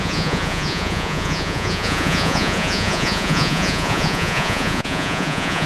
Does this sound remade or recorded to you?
remade